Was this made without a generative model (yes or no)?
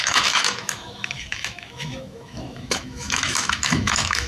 no